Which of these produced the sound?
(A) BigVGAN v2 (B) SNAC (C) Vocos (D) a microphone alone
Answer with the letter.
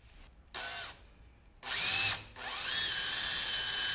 D